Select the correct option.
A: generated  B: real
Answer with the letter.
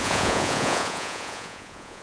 A